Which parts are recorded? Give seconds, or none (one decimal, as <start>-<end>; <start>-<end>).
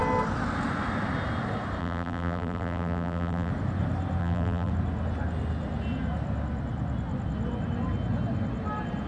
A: 0.0-1.8; 3.5-4.2; 4.7-9.1